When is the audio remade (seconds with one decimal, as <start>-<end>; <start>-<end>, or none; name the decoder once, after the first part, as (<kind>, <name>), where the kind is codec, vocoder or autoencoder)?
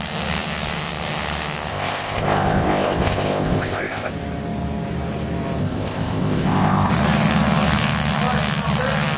1.7-4.1 (codec, ZipCodec); 5.6-6.9